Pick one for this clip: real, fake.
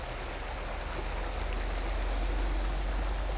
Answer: real